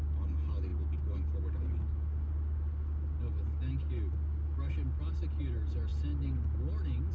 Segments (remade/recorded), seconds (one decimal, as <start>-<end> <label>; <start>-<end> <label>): 0.0-7.1 recorded